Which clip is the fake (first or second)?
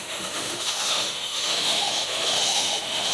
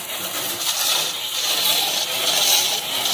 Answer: first